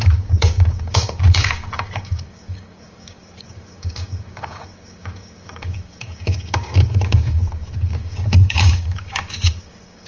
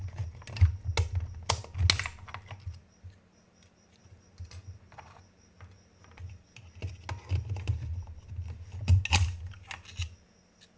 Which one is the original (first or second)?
second